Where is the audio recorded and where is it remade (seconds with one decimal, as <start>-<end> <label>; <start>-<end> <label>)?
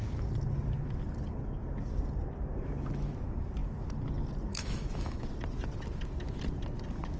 0.0-4.5 recorded; 4.5-5.2 remade; 5.2-7.2 recorded